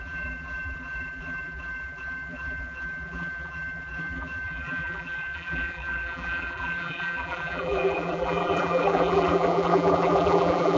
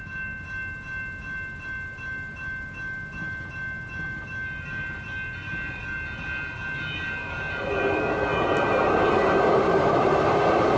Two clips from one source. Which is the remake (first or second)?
first